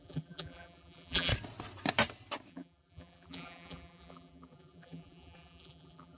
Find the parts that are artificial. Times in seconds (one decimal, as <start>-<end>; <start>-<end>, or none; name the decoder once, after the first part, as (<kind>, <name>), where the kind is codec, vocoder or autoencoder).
0.0-1.3 (vocoder, BigVGAN v2); 2.5-6.2